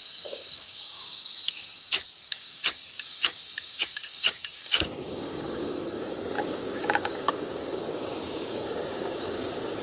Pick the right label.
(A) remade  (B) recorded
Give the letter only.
A